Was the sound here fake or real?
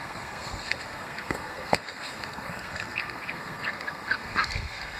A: fake